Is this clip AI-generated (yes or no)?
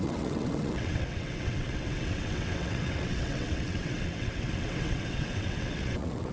yes